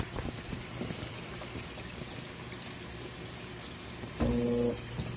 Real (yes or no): yes